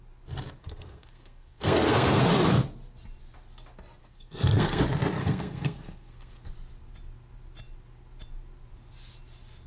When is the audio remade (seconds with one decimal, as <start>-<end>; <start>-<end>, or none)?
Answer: 0.6-2.2; 4.0-4.8; 5.2-6.5